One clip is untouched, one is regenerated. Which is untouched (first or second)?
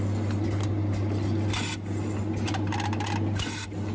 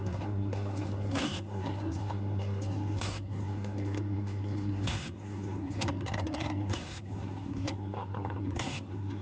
first